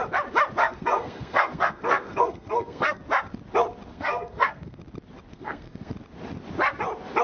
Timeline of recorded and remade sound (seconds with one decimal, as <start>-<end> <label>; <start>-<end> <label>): 0.0-0.6 recorded; 0.6-3.0 remade; 3.0-3.9 recorded; 3.9-4.8 remade; 4.8-5.3 recorded; 5.3-5.9 remade; 5.9-7.2 recorded